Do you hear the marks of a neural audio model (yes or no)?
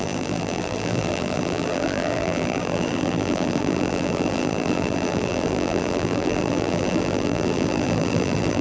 yes